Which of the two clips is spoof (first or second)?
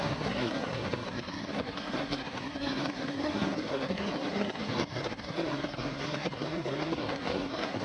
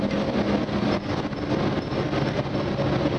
first